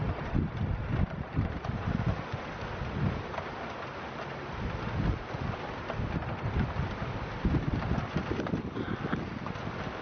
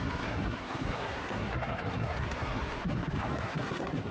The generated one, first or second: second